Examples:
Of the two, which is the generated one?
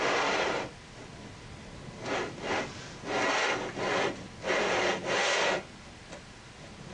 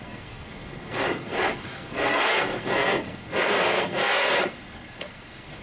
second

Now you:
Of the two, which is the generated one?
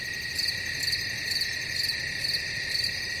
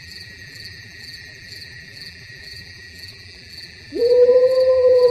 second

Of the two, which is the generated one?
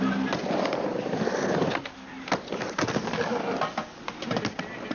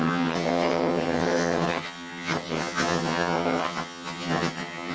second